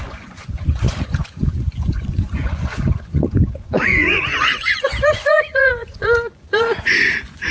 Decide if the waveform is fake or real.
fake